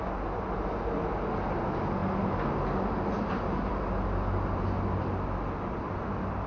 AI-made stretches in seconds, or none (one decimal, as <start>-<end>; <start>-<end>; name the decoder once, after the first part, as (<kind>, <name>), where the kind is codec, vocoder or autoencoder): none

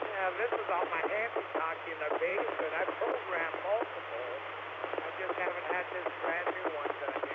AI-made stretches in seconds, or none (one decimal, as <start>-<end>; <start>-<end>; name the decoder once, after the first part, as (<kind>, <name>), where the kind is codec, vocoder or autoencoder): 0.0-4.8 (vocoder, BigVGAN v2); 5.4-7.3

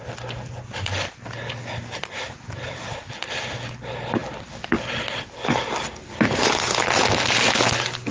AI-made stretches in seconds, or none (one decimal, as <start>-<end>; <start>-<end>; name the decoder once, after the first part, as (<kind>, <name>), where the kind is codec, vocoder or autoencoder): none

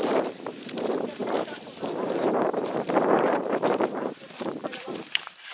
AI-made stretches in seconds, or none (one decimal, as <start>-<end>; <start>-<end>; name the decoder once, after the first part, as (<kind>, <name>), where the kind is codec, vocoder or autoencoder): 0.0-5.5 (vocoder, BigVGAN v2)